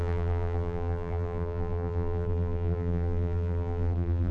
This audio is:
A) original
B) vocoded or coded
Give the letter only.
B